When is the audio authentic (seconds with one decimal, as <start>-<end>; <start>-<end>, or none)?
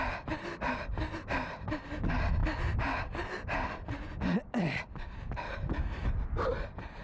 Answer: 0.0-7.0